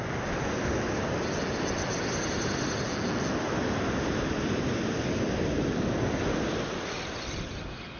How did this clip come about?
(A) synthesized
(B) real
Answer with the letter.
B